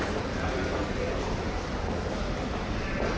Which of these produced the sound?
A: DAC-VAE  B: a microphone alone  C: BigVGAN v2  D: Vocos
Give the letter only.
B